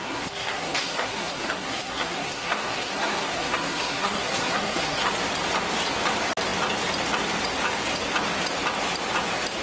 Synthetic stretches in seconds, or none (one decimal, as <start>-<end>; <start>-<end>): 0.0-5.1